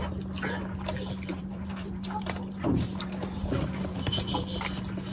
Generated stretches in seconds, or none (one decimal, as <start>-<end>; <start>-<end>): 1.3-4.4